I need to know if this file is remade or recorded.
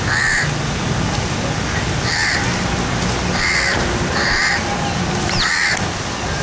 recorded